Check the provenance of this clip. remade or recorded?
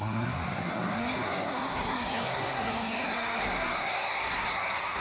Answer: remade